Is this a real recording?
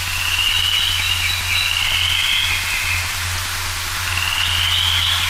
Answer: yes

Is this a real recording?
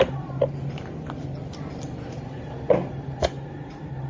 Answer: yes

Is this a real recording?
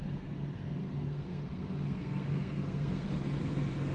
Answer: no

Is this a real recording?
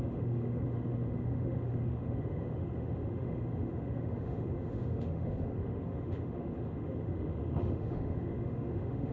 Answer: no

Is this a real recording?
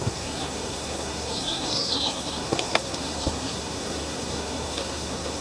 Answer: no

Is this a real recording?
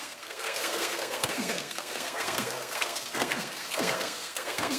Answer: no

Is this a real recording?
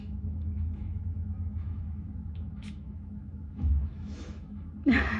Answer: no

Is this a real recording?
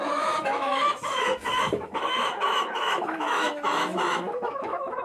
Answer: no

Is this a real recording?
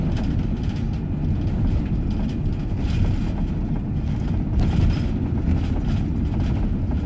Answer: yes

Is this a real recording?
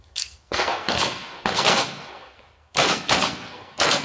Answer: no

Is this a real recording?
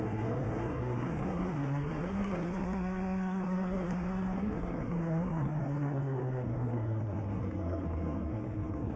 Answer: no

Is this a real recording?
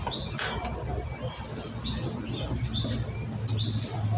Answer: yes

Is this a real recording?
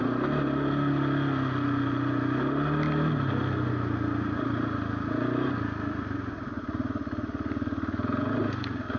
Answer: yes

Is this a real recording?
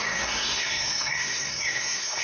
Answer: no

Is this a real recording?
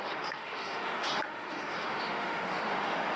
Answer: no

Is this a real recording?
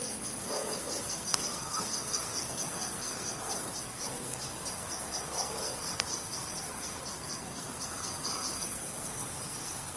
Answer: no